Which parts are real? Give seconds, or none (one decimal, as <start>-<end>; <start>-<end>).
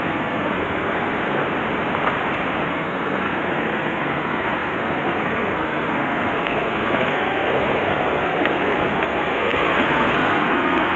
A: 1.4-2.7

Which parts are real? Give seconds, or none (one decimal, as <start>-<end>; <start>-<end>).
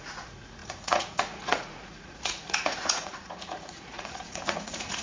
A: none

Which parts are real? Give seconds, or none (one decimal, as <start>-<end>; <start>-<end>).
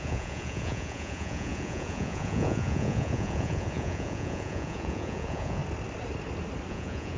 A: 5.6-6.7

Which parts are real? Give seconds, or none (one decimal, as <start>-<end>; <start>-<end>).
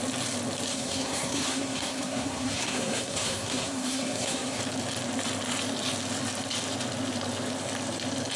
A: 0.0-0.7; 4.6-8.4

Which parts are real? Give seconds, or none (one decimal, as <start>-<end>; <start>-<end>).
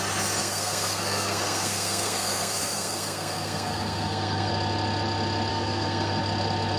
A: 0.0-0.4; 4.5-5.5; 6.2-6.8